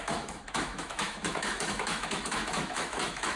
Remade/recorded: remade